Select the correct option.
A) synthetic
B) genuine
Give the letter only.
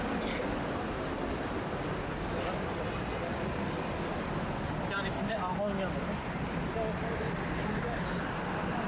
B